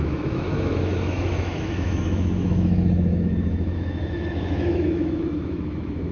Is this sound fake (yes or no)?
yes